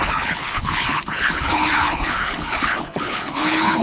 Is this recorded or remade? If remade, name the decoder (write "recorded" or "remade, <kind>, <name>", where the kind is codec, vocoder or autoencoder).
remade, codec, HILCodec